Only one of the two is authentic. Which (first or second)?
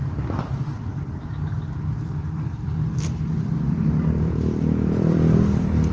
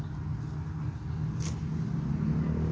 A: second